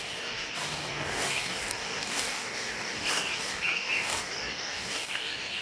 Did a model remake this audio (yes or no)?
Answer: yes